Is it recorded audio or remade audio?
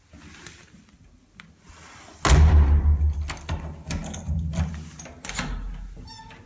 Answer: recorded